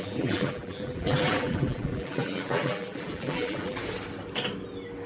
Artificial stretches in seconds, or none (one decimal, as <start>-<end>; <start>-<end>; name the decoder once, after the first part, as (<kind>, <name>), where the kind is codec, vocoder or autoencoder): 0.0-3.8 (vocoder, BigVGAN v2)